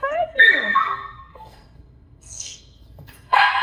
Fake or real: fake